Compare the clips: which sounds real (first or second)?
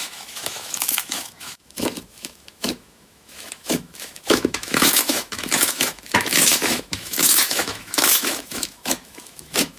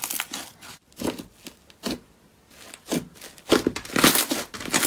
second